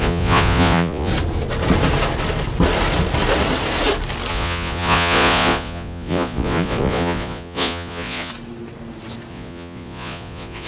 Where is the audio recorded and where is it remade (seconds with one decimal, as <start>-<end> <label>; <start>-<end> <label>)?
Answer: 0.0-1.1 remade; 1.1-4.3 recorded; 4.3-8.3 remade; 8.3-9.3 recorded; 9.3-10.7 remade